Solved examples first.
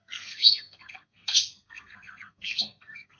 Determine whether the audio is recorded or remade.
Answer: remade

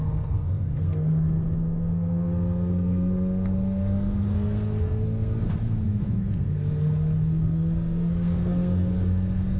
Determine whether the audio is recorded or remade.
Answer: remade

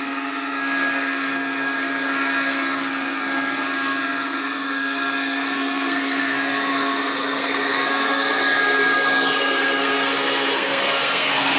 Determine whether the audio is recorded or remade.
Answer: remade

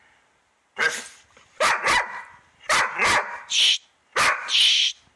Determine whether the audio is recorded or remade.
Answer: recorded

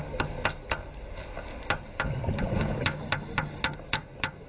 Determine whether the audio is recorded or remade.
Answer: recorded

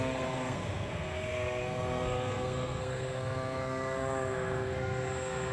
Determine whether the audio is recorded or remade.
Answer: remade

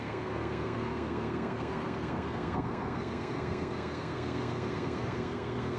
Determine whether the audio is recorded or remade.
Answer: remade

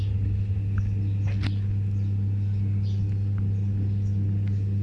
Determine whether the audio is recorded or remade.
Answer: recorded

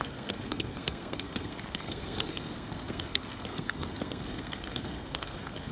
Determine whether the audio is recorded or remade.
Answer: remade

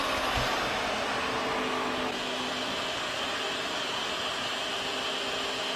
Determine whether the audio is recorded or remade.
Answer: recorded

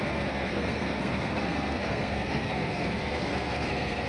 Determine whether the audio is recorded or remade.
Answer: remade